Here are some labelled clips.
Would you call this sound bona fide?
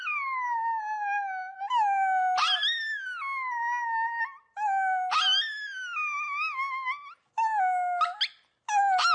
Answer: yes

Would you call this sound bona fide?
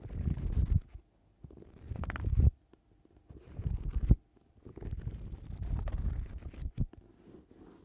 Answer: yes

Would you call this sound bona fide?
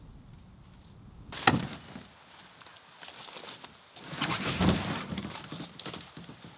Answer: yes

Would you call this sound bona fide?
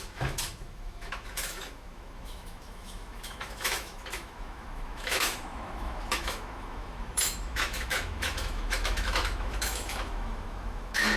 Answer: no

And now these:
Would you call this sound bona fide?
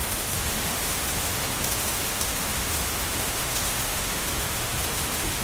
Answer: no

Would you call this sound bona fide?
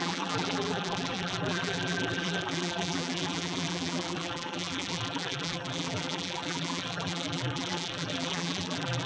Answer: no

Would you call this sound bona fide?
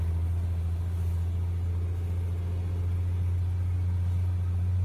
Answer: yes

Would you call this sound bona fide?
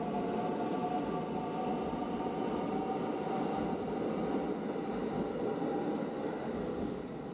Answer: yes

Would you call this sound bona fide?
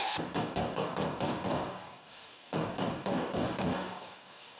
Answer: no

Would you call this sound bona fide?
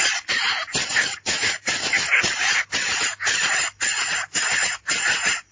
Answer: yes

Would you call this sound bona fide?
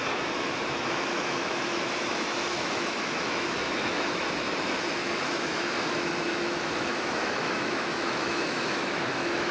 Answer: no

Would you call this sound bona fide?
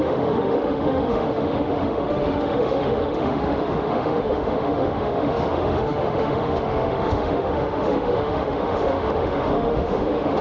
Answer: no